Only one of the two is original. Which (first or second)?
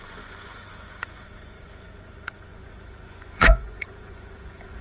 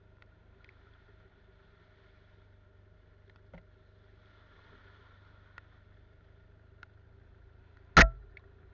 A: second